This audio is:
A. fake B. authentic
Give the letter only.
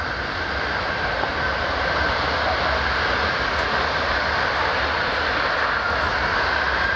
B